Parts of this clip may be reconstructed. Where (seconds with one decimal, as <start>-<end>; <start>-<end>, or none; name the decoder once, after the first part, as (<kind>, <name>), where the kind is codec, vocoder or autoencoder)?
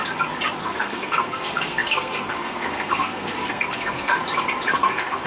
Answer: 0.6-4.1 (codec, SNAC); 4.7-5.3